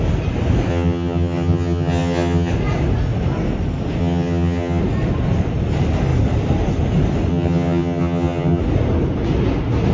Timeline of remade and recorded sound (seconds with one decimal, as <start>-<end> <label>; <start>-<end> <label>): 0.0-0.7 recorded; 0.7-2.5 remade; 2.5-4.0 recorded; 4.0-4.8 remade; 4.8-7.3 recorded; 7.3-8.6 remade; 8.6-9.9 recorded